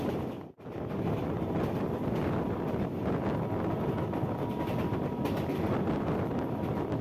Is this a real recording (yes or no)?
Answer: yes